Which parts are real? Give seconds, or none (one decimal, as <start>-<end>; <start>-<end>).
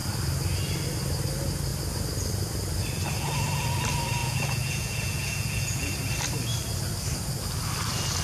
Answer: 0.0-4.2; 5.9-8.2